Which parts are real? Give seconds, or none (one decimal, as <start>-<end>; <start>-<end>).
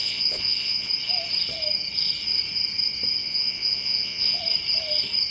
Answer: 0.9-3.2; 4.4-5.3